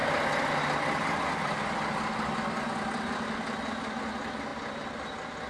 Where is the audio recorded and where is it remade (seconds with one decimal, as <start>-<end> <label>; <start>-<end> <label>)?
0.0-5.5 recorded

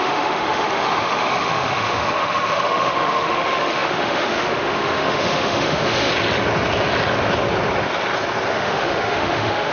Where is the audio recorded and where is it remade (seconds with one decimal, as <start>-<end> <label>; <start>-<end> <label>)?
0.0-6.1 remade; 6.1-8.5 recorded; 8.5-9.7 remade

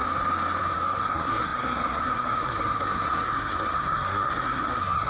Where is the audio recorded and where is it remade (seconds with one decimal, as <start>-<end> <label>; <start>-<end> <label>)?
0.0-0.6 recorded; 0.6-5.1 remade

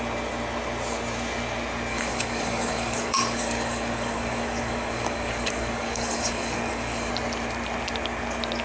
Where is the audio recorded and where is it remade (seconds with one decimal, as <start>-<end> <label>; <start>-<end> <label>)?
0.0-1.9 recorded; 1.9-7.1 remade; 7.1-8.6 recorded

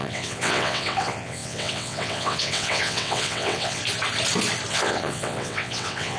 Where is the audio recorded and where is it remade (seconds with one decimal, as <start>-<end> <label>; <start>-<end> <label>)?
0.0-3.8 remade; 3.8-4.7 recorded; 4.7-6.2 remade

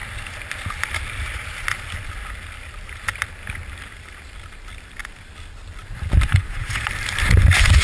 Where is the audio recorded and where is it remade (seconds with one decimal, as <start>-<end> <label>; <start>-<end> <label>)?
0.0-6.3 recorded; 6.3-6.9 remade; 6.9-7.8 recorded